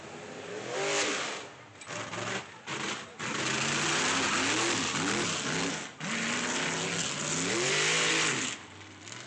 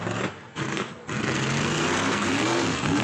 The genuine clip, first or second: first